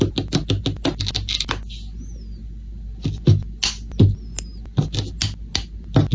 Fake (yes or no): no